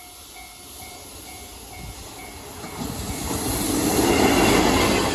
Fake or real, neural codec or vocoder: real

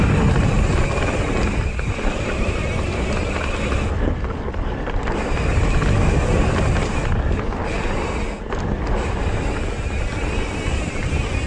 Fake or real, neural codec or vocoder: real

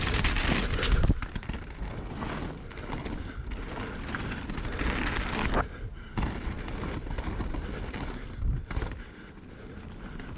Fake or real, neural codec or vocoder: real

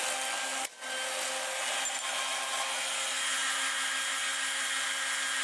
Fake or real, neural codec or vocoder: real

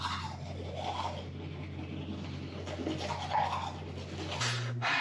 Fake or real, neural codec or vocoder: real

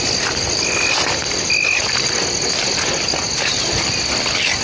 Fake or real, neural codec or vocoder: real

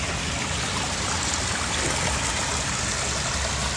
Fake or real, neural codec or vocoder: real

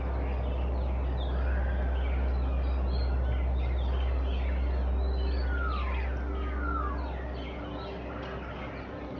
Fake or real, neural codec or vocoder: real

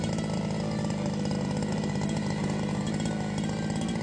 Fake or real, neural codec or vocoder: real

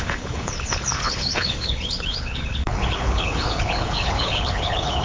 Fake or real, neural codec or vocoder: fake, codec, HILCodec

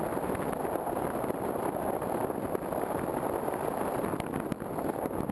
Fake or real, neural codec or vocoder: real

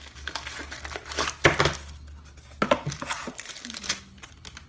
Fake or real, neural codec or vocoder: real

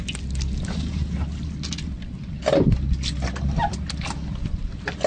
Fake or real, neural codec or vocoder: real